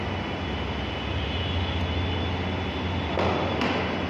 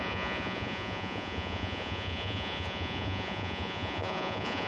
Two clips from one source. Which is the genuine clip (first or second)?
first